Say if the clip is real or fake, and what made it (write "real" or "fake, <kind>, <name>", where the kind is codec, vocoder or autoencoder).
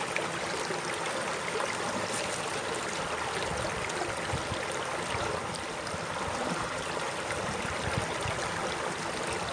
real